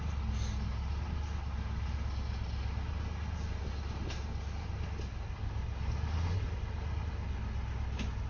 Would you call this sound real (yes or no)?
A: yes